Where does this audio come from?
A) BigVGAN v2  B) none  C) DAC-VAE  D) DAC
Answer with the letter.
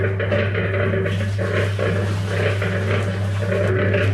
B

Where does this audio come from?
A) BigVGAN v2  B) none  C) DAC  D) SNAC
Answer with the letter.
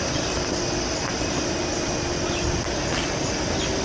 B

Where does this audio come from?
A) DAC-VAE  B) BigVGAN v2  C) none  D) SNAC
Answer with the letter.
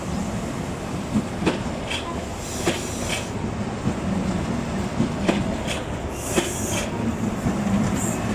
C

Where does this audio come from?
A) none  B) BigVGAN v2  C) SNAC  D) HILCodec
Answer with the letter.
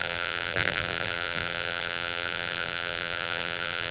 B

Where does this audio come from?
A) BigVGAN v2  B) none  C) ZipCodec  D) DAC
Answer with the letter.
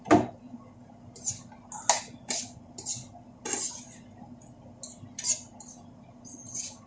B